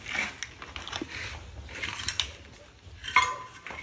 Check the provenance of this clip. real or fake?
real